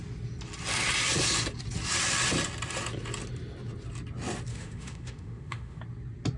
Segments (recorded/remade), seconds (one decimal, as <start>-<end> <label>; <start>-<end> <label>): 0.0-4.5 recorded; 4.5-5.8 remade; 5.8-6.4 recorded